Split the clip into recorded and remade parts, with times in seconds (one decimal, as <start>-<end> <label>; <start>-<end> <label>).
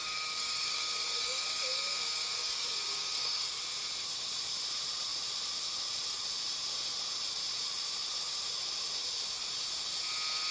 0.0-3.6 remade; 3.6-10.5 recorded